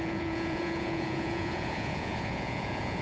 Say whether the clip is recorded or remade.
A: remade